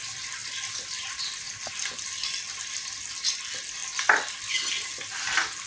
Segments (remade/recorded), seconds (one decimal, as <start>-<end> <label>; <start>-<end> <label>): 0.0-5.7 recorded